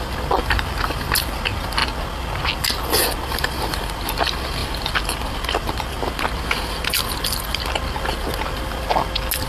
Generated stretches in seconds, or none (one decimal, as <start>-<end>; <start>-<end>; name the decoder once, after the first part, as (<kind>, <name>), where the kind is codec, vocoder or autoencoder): none